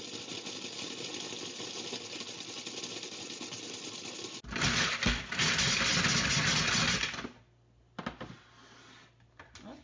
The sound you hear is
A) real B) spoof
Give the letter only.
A